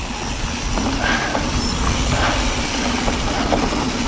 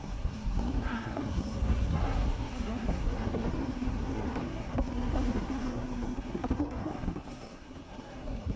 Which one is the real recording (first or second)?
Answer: first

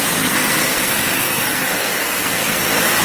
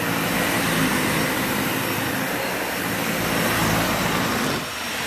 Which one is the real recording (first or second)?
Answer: second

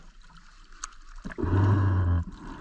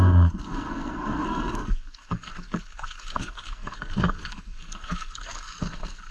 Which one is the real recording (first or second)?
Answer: first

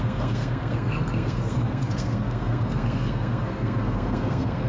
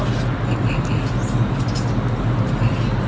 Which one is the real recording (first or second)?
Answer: second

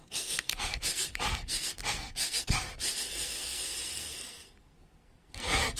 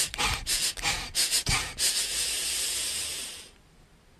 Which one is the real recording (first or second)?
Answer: second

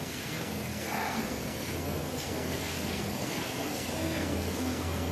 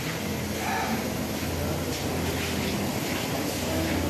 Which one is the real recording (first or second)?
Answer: second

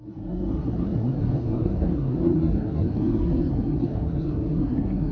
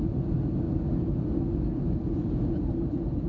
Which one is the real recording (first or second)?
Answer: second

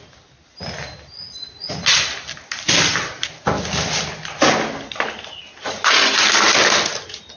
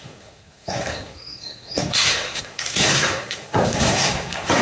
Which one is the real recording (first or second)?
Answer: first